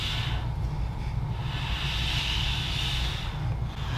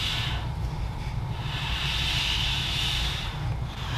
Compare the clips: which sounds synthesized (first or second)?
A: second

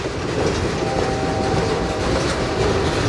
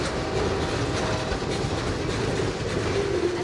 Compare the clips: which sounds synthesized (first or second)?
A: first